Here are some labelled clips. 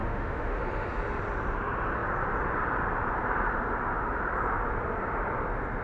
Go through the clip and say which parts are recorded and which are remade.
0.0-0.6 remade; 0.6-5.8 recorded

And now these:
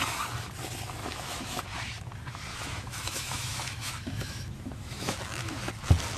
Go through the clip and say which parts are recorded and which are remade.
0.0-1.0 recorded; 1.0-1.6 remade; 1.6-2.5 recorded; 2.5-5.7 remade; 5.7-6.2 recorded

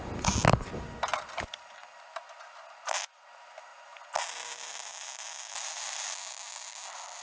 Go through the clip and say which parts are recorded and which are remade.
0.0-7.2 recorded

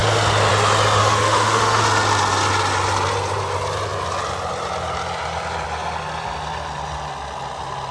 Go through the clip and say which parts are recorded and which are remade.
0.0-1.0 recorded; 1.0-1.8 remade; 1.8-7.9 recorded

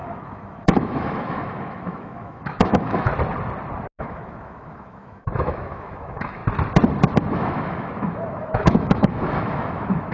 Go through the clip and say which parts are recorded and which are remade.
0.0-3.1 remade; 3.1-4.0 recorded; 4.0-6.4 remade; 6.4-7.2 recorded; 7.2-10.1 remade